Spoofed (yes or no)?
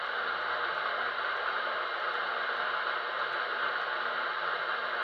no